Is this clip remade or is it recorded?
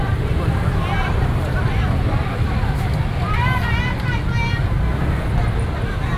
recorded